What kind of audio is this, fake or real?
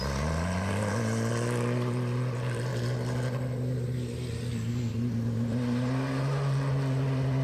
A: real